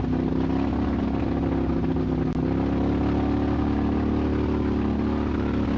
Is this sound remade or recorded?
recorded